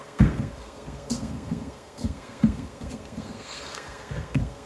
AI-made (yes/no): yes